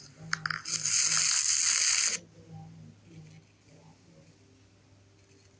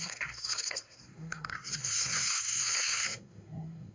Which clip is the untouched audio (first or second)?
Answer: first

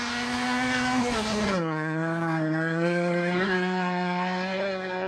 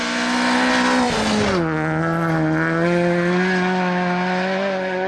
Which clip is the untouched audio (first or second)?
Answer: second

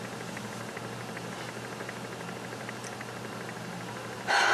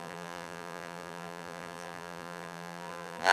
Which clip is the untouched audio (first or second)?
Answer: first